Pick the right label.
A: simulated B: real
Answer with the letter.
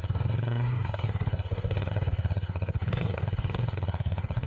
A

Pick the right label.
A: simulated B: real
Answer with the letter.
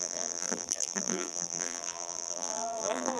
A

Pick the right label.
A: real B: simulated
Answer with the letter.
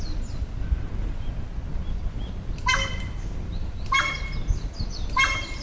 A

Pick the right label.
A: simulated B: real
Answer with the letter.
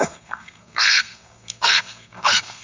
A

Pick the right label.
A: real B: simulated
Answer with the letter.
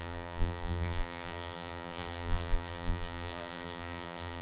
B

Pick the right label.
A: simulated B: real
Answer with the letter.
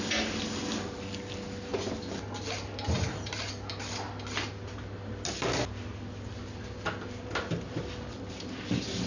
B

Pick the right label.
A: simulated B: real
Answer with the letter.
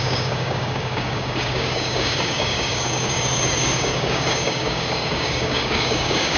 A